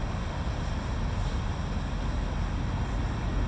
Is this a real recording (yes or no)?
yes